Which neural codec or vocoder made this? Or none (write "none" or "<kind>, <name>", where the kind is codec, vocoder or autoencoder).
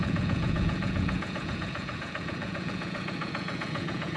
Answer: vocoder, Vocos